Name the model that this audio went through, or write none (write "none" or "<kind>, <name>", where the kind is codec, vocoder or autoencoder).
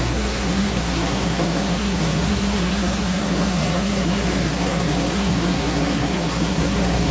codec, SNAC